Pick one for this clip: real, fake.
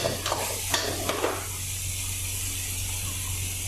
real